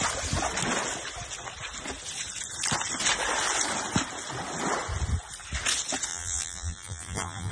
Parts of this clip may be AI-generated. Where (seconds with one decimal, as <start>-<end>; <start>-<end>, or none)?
6.1-7.5